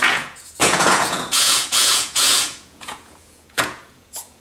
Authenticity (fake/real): fake